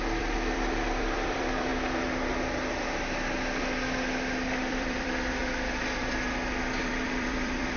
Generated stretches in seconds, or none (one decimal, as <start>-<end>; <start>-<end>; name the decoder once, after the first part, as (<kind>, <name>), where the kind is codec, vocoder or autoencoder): 0.0-1.7 (vocoder, BigVGAN v2); 4.7-5.4; 6.8-7.8